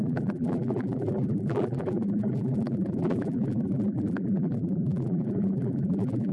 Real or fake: fake